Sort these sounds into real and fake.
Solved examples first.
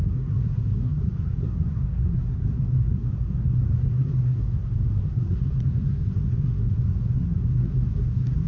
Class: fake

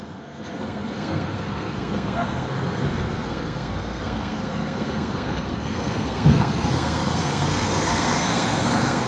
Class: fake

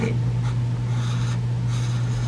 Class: real